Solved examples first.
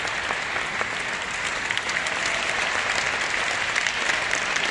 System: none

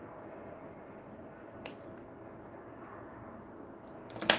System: none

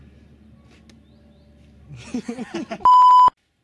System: none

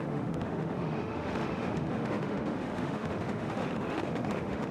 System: autoencoder, DAC-VAE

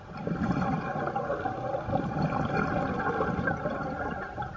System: none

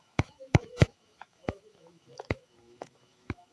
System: autoencoder, DAC-VAE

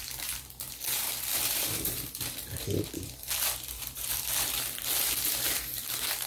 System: vocoder, BigVGAN v2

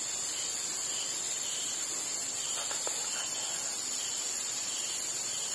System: none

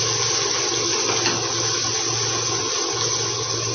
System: none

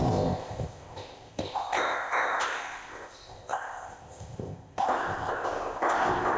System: codec, ZipCodec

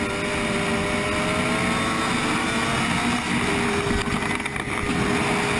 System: none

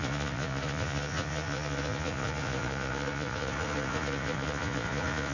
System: vocoder, Vocos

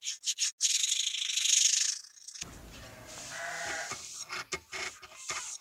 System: none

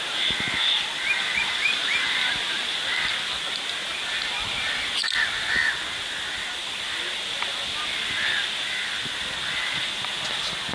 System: none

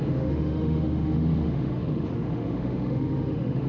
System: autoencoder, DAC-VAE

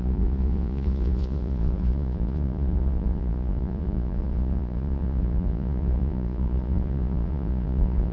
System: vocoder, Vocos